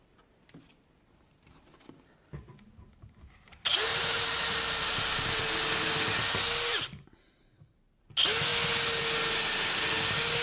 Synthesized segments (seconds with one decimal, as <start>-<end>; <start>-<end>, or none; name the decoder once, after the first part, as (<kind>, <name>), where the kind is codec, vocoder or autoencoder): 3.9-5.4 (vocoder, BigVGAN v2); 6.7-7.4